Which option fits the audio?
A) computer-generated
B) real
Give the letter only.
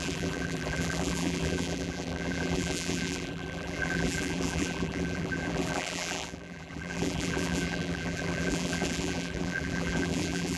A